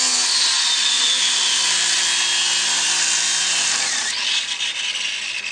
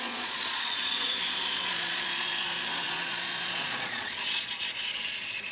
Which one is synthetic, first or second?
second